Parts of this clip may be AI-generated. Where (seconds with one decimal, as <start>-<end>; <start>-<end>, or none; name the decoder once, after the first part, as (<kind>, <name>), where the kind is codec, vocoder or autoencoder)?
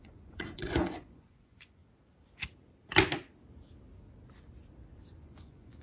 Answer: 0.0-1.8 (vocoder, Vocos); 5.1-5.8